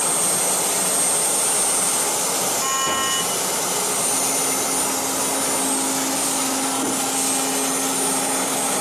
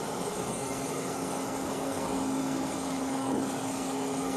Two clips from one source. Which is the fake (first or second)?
second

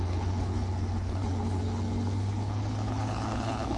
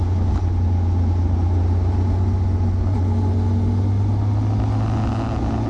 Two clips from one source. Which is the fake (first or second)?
first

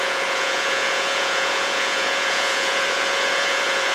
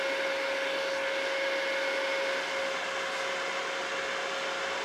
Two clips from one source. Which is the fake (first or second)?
first